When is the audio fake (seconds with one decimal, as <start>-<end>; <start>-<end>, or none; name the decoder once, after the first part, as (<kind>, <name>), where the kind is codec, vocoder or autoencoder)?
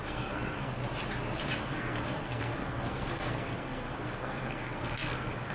0.0-0.8 (codec, SNAC); 1.6-5.5